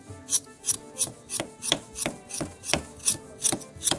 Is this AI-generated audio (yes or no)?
no